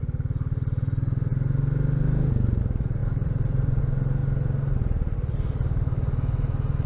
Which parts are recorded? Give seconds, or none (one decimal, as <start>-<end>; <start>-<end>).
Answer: 0.0-3.0; 3.8-6.9